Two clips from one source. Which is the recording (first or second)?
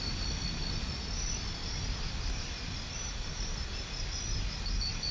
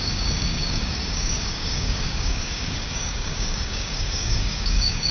first